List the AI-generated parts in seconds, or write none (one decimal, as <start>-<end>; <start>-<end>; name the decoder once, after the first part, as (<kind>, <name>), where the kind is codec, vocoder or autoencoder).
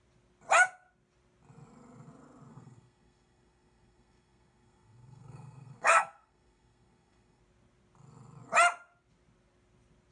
2.5-7.4 (codec, SNAC)